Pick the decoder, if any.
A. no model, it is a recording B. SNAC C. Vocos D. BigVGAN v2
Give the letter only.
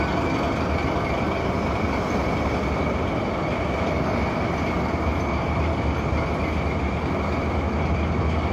A